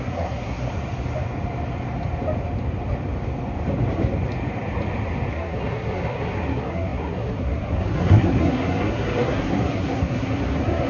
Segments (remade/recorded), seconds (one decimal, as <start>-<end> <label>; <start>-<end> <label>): 0.0-0.7 remade; 0.7-5.3 recorded; 5.3-10.9 remade